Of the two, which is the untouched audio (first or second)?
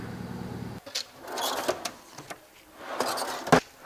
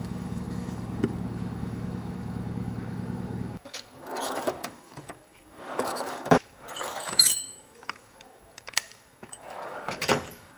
first